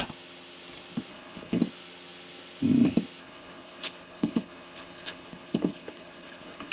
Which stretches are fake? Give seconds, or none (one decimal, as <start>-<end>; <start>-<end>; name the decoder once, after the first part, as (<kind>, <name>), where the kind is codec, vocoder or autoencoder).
1.1-1.6 (codec, HILCodec); 3.2-6.7